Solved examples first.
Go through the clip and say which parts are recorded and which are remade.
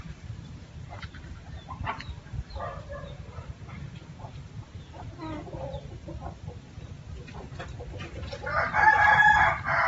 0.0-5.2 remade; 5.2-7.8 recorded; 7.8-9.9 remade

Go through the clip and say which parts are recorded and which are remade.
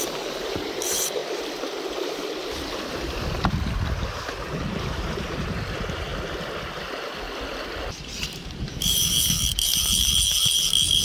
0.0-1.2 remade; 1.2-4.8 recorded; 4.8-6.1 remade; 6.1-8.1 recorded; 8.1-11.0 remade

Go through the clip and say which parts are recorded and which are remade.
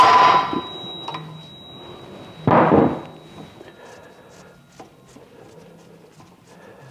0.0-6.9 recorded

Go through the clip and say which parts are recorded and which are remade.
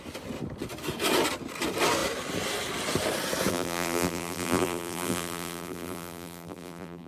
0.0-3.5 recorded; 3.5-7.1 remade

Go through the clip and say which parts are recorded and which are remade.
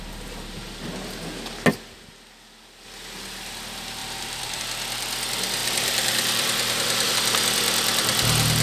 0.0-4.0 recorded; 4.0-4.6 remade; 4.6-5.6 recorded; 5.6-7.1 remade; 7.1-8.6 recorded